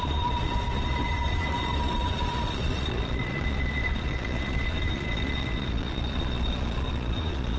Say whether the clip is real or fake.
fake